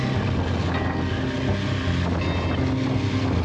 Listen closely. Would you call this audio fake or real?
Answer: real